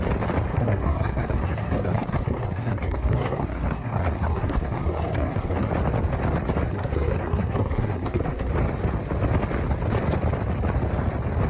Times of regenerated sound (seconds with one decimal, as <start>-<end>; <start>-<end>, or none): 0.5-5.7; 6.7-8.5